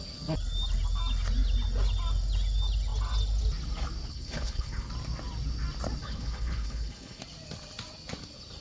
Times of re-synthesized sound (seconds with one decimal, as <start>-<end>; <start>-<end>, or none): 4.1-4.9; 6.0-7.2